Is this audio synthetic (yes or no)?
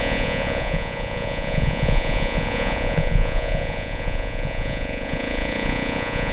yes